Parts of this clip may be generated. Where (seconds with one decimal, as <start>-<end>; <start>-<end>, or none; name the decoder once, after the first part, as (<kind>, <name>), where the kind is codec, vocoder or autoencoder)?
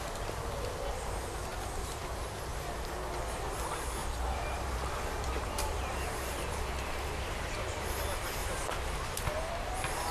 1.5-2.0 (vocoder, BigVGAN v2); 4.0-8.0; 8.4-9.5